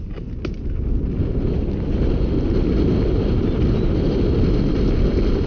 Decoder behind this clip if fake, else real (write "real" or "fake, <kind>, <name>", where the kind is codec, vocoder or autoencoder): real